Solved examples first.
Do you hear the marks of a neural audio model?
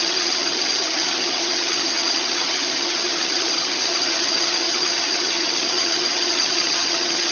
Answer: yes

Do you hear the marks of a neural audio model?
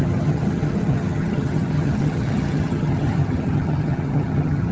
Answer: yes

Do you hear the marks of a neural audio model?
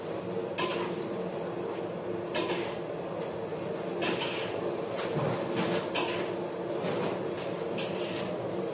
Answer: no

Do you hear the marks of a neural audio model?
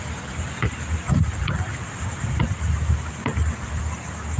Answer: no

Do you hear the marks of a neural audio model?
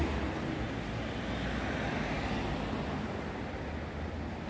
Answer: no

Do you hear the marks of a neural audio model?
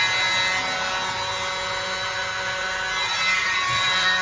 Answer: no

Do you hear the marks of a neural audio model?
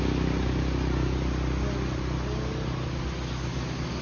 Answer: no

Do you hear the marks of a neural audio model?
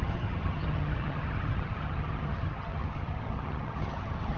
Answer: yes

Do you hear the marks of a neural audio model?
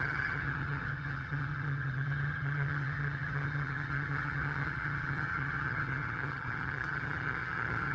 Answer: yes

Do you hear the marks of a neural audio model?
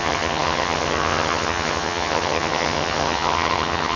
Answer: yes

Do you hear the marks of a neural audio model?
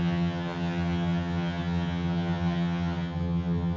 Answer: yes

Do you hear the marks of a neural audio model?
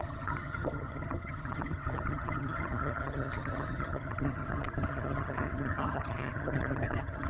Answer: yes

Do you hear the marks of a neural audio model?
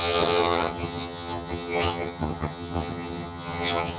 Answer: yes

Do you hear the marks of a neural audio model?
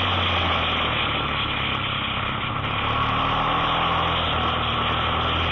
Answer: no